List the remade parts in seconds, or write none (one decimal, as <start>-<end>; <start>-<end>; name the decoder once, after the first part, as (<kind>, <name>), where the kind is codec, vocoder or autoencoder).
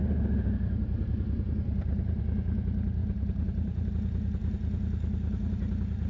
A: 0.0-2.2 (vocoder, BigVGAN v2); 3.0-3.9